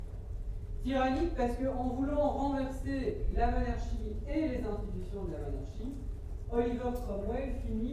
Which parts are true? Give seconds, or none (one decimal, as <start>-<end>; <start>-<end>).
0.6-7.9